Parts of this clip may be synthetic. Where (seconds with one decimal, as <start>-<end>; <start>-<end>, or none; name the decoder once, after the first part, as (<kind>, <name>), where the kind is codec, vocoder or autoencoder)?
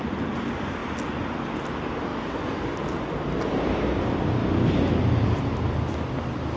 none